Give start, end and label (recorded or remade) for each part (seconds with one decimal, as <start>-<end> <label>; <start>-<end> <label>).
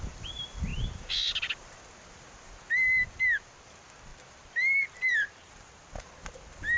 0.0-4.1 recorded; 4.1-5.5 remade; 5.5-6.8 recorded